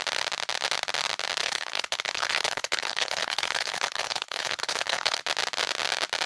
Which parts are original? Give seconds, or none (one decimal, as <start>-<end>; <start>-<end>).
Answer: 0.0-1.4; 5.2-6.3